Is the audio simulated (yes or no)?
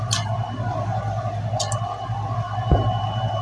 no